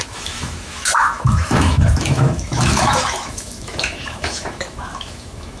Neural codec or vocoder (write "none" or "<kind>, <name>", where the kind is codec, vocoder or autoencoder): autoencoder, DAC-VAE